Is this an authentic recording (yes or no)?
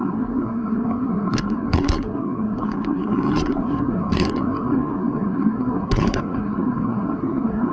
no